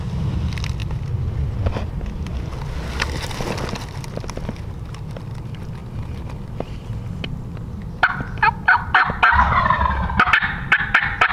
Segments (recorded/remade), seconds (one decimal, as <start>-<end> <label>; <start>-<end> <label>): 0.0-11.3 recorded